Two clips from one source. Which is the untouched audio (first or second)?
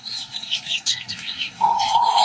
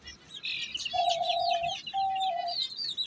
second